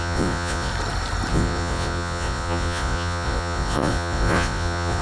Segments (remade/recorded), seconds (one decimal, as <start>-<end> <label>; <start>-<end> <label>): 0.0-0.7 remade; 0.7-1.3 recorded; 1.3-5.0 remade